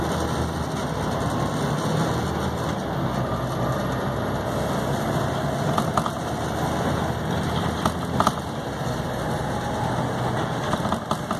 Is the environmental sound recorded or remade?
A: recorded